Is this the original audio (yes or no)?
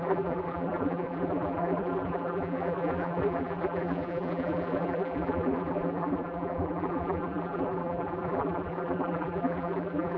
no